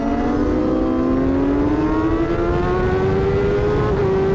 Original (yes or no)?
yes